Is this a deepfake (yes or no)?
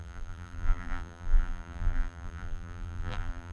yes